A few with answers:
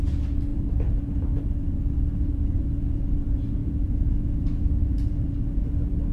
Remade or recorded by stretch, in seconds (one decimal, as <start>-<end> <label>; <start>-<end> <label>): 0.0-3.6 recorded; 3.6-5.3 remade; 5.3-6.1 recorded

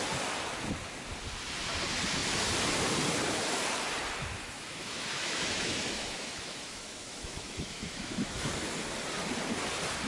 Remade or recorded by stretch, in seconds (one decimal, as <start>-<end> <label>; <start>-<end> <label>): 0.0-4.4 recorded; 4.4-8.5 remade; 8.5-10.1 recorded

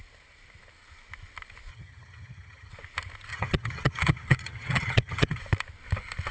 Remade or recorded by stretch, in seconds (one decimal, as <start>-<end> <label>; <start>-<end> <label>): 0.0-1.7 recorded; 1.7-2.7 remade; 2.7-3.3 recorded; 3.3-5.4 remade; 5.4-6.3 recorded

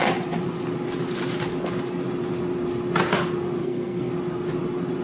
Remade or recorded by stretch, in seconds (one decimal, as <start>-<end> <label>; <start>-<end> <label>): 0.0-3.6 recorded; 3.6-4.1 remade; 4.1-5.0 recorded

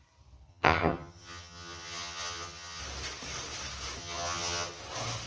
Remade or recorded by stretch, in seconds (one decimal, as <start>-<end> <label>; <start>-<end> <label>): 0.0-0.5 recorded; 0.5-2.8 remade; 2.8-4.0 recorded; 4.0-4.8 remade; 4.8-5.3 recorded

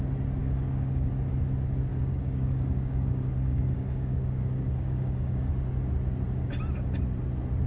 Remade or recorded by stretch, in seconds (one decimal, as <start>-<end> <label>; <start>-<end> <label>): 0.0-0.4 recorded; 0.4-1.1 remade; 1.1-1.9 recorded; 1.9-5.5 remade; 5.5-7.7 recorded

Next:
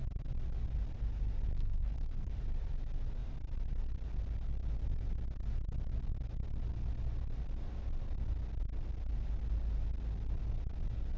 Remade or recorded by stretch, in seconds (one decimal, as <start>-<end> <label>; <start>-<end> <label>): 0.0-1.5 recorded; 1.5-2.3 remade; 2.3-11.2 recorded

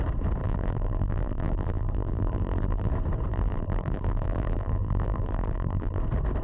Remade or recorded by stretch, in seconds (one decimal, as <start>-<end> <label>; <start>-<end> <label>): 0.0-0.4 recorded; 0.4-2.9 remade; 2.9-3.3 recorded; 3.3-6.0 remade; 6.0-6.4 recorded